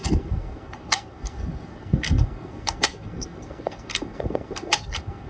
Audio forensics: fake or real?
fake